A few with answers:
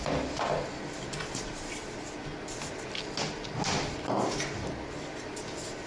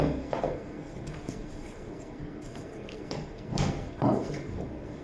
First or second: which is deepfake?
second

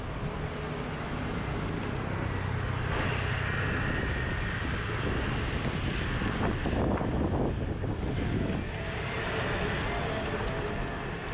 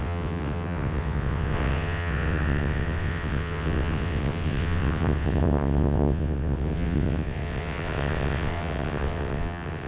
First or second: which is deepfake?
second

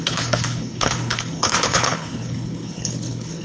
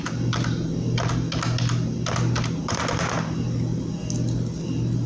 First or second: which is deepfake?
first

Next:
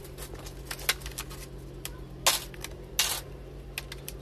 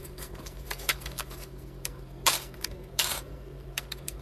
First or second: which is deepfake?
second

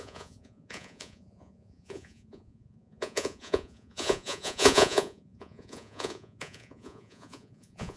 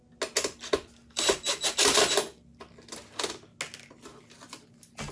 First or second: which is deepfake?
first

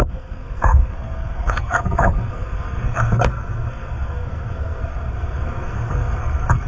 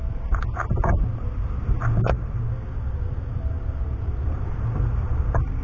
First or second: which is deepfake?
first